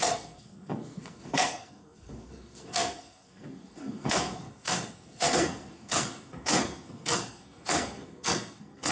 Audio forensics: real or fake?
fake